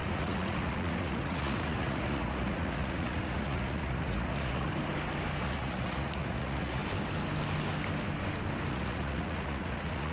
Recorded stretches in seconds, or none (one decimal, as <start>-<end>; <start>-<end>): 4.7-5.4; 6.8-8.7